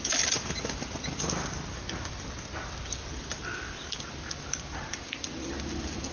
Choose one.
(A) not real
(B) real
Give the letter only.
B